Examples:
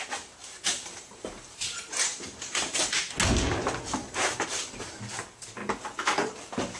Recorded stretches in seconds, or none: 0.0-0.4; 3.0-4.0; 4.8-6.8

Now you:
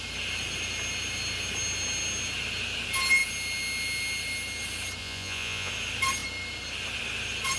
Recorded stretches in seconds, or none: 0.0-5.0; 5.7-7.6

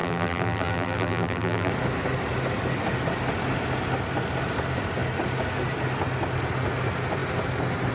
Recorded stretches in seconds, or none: 1.7-7.9